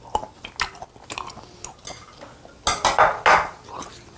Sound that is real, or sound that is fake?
real